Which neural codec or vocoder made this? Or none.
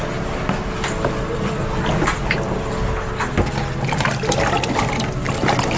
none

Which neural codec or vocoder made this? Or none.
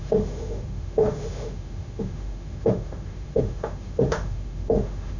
autoencoder, DAC-VAE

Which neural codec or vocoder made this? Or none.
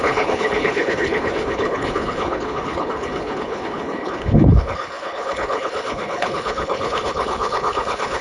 codec, HILCodec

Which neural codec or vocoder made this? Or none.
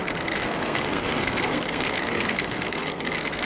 codec, SNAC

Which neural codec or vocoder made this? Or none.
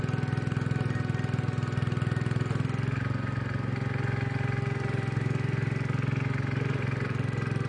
none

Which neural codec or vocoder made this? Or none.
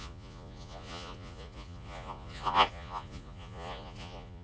vocoder, Vocos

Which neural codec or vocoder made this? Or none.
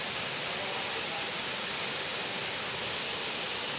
none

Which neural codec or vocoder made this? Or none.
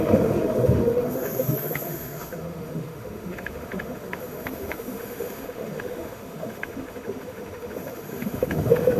autoencoder, DAC-VAE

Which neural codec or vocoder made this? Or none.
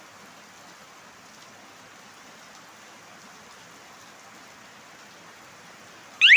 none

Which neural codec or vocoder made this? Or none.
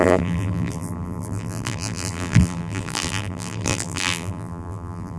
vocoder, BigVGAN v2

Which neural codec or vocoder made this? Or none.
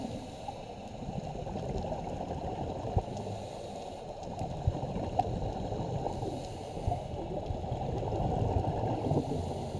none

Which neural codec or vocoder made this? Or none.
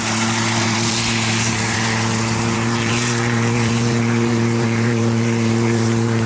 vocoder, BigVGAN v2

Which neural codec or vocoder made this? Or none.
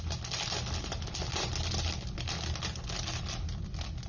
none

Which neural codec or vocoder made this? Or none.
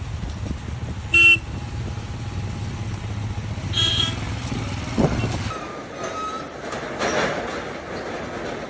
none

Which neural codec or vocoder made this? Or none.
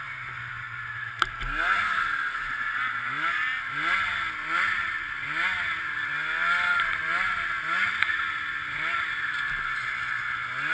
none